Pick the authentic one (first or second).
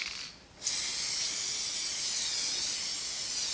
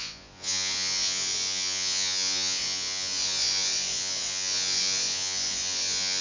first